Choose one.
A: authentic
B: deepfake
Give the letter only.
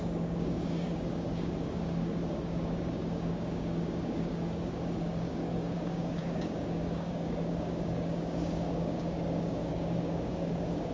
B